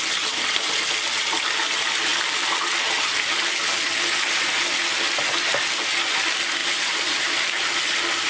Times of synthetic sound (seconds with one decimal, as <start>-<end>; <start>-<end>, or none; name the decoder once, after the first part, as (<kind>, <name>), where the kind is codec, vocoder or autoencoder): 6.6-7.7 (vocoder, BigVGAN v2)